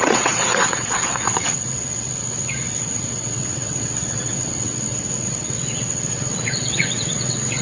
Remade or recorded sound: remade